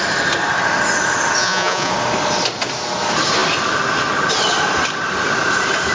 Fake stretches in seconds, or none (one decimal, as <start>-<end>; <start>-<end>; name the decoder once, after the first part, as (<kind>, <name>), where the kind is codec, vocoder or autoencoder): 1.4-1.9 (vocoder, Vocos)